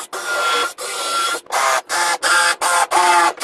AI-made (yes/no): no